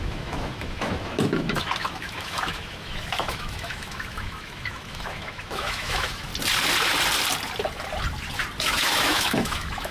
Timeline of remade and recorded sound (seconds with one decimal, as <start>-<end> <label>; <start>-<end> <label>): 0.0-6.3 remade; 6.3-8.6 recorded; 8.6-9.9 remade